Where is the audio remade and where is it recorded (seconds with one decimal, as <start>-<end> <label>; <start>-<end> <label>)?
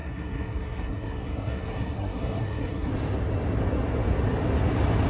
0.0-2.9 remade; 2.9-5.1 recorded